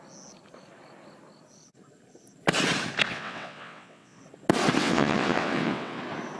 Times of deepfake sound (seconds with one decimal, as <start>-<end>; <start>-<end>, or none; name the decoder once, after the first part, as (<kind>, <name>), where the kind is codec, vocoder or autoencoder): 3.1-4.2 (vocoder, WaveNeXt); 4.8-6.0